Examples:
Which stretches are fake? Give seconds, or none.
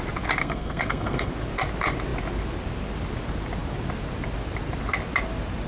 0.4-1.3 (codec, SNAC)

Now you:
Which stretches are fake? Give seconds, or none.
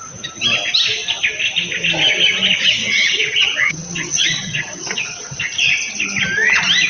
2.8-5.4 (vocoder, WaveNeXt)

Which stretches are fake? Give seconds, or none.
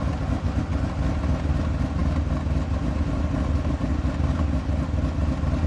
none